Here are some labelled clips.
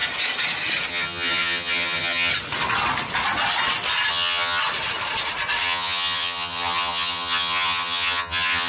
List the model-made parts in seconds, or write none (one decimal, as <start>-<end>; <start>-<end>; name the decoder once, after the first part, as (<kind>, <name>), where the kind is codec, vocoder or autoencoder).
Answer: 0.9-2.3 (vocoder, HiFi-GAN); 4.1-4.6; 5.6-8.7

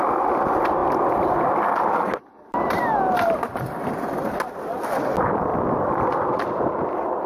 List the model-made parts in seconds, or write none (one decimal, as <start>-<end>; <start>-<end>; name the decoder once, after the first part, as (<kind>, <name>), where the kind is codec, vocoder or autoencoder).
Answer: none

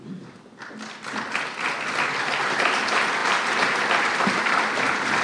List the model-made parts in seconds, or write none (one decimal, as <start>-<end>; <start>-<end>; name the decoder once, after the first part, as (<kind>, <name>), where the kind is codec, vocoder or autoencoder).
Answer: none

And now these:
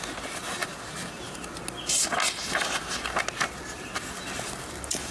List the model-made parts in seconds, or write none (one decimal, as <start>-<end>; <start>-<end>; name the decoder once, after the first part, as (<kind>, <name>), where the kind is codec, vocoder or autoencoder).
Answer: none

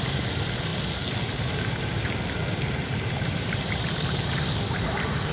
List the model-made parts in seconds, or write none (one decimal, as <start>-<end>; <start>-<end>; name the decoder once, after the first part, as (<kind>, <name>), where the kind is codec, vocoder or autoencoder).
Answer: none